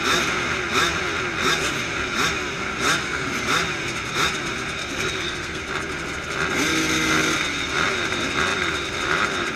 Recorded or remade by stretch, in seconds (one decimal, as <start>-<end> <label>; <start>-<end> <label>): 0.0-4.8 recorded; 4.8-5.6 remade; 5.6-9.6 recorded